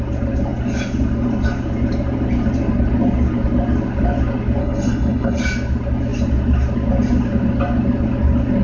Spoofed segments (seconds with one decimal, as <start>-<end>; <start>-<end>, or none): 4.6-5.4